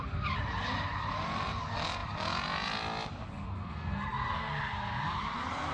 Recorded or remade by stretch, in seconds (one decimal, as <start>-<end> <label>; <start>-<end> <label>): 0.0-3.5 recorded; 3.5-4.5 remade; 4.5-5.7 recorded